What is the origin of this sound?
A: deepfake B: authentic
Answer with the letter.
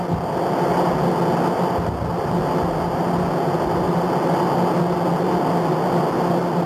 B